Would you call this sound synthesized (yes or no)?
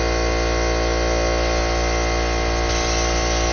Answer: no